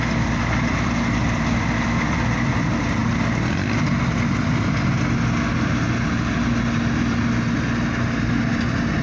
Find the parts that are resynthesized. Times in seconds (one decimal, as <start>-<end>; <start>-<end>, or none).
none